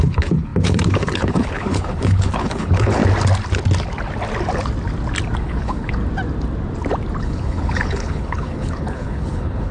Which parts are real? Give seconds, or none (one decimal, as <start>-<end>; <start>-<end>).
3.0-5.4; 6.0-7.2